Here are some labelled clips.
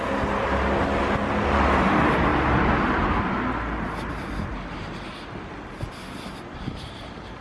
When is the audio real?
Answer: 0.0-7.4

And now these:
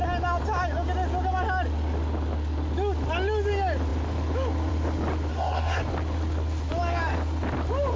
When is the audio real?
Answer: 0.0-5.3; 5.8-8.0